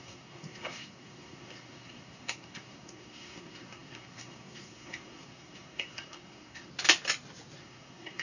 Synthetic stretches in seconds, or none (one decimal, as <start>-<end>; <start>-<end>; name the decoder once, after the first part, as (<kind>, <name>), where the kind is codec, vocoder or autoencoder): 0.0-6.7 (codec, SNAC); 7.6-8.2